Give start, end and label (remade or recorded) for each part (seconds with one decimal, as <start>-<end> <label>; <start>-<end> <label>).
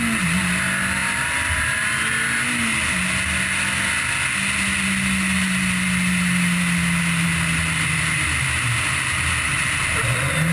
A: 0.0-10.5 recorded